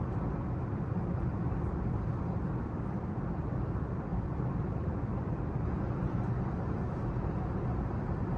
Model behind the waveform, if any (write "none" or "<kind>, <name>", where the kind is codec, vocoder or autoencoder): none